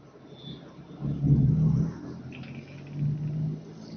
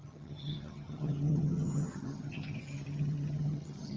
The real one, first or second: first